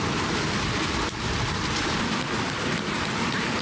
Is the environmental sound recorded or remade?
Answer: recorded